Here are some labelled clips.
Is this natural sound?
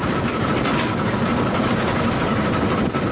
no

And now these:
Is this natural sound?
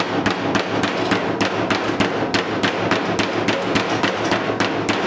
yes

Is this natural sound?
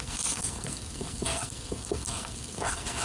no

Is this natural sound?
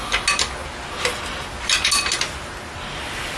yes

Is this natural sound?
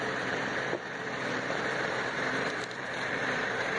no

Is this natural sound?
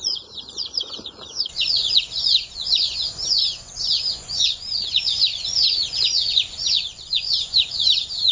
no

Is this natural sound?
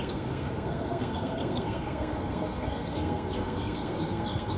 no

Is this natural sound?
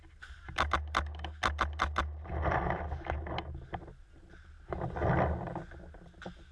yes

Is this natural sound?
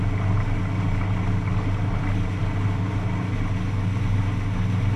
yes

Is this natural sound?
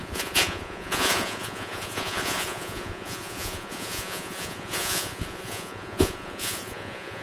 no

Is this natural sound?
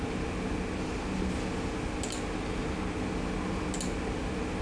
yes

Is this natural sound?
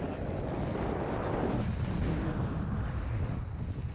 yes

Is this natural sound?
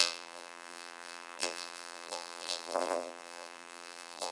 no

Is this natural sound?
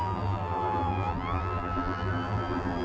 no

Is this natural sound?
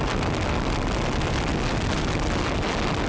yes